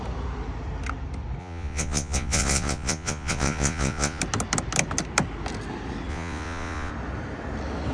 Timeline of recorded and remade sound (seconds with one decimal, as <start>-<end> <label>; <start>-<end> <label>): 0.0-1.4 recorded; 1.4-4.2 remade; 4.2-6.1 recorded; 6.1-6.9 remade; 6.9-7.9 recorded